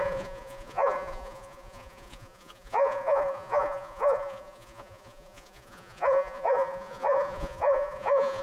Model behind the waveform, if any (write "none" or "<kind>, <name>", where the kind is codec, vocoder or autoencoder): vocoder, Vocos